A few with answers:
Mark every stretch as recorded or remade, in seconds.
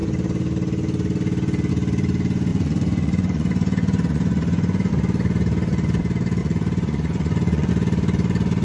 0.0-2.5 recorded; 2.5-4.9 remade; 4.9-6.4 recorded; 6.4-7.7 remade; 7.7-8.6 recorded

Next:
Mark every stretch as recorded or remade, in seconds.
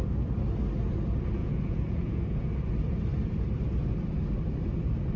0.0-1.4 recorded; 1.4-2.5 remade; 2.5-5.2 recorded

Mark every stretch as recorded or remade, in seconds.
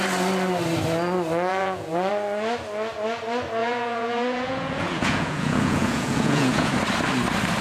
0.0-1.5 recorded; 1.5-2.1 remade; 2.1-3.6 recorded; 3.6-6.7 remade; 6.7-7.6 recorded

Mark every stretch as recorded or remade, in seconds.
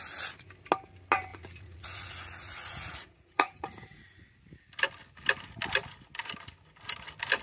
0.0-1.3 recorded; 1.3-4.2 remade; 4.2-7.4 recorded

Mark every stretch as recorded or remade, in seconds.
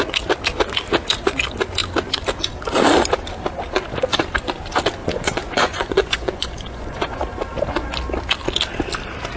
0.0-5.0 recorded; 5.0-7.2 remade; 7.2-9.4 recorded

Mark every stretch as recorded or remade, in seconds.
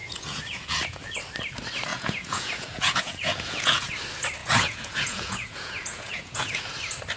0.0-1.2 remade; 1.2-1.9 recorded; 1.9-3.9 remade; 3.9-4.4 recorded; 4.4-6.7 remade; 6.7-7.2 recorded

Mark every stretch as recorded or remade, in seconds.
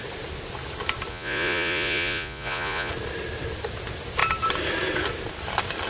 0.0-1.1 recorded; 1.1-2.9 remade; 2.9-5.9 recorded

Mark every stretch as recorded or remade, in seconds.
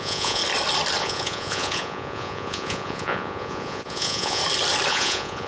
0.0-0.4 remade; 0.4-1.0 recorded; 1.0-4.4 remade; 4.4-4.9 recorded; 4.9-5.5 remade